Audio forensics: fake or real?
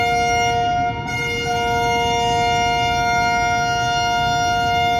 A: real